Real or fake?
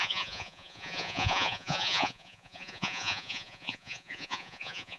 fake